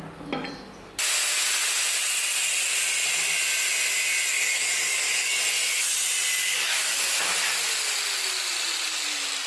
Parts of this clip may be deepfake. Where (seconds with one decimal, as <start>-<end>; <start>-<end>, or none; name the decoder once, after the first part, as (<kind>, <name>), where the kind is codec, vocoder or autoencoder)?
4.3-5.4 (codec, DAC); 6.4-7.1